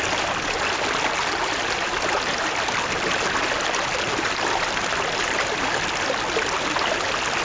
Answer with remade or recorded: recorded